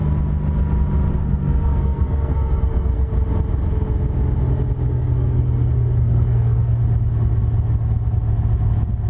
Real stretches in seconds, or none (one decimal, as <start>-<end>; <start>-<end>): 0.0-1.1; 3.1-4.9; 6.8-9.1